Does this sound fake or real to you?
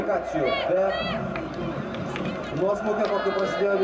real